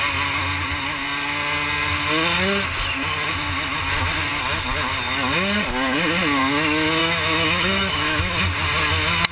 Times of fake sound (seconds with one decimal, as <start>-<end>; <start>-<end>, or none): 7.0-8.4